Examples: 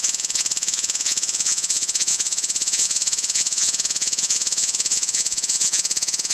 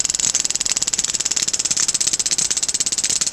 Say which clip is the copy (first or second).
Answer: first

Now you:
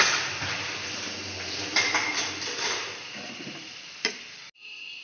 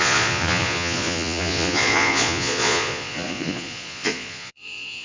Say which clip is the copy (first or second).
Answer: second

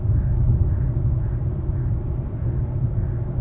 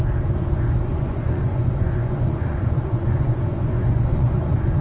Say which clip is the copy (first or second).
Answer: second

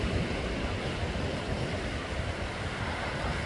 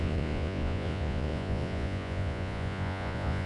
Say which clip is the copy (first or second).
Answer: second